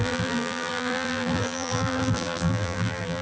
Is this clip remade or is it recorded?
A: remade